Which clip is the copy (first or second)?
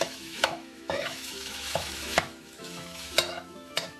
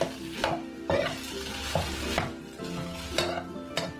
first